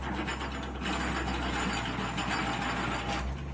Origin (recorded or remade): recorded